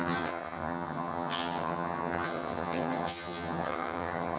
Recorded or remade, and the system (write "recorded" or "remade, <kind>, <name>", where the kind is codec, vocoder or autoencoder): remade, vocoder, HiFi-GAN